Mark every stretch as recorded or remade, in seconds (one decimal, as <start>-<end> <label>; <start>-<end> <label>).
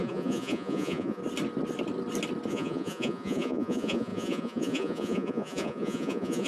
0.0-1.2 remade; 1.2-2.5 recorded; 2.5-6.5 remade